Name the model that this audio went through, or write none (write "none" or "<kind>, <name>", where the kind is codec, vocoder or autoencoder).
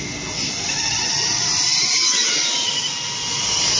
none